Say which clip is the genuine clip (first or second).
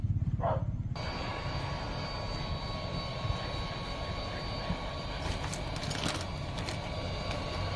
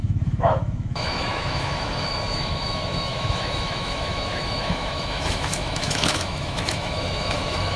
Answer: first